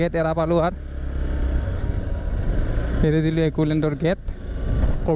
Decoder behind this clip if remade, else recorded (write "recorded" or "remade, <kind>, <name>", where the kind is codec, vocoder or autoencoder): recorded